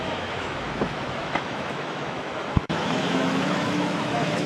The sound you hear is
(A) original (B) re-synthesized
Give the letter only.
B